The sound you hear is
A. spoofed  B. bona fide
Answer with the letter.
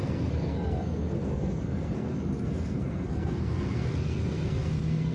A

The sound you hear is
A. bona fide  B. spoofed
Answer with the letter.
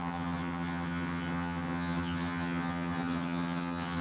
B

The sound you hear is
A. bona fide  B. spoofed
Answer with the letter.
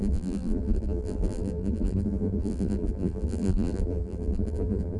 B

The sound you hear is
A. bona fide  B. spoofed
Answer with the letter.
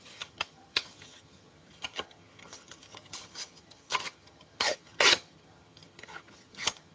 B